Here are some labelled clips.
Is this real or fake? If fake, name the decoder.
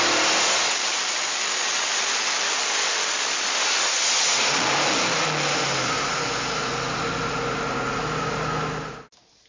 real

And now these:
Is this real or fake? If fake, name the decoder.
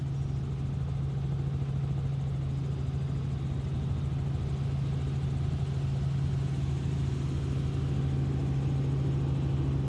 real